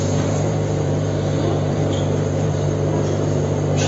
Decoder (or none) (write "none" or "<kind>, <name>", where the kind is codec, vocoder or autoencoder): vocoder, BigVGAN v2